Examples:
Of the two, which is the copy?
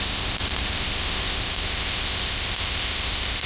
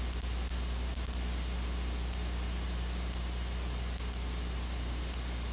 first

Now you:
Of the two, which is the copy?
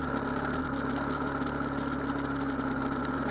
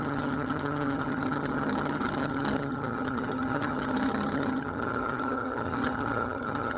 second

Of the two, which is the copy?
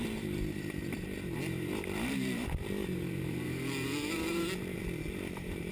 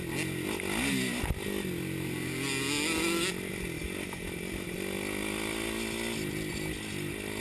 first